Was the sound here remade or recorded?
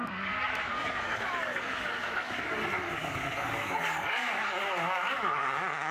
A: remade